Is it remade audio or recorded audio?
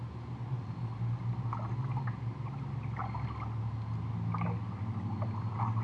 recorded